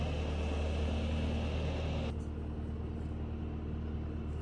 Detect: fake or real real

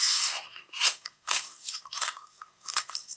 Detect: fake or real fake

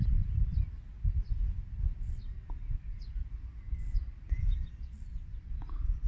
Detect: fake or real real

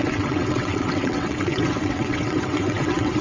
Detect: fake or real fake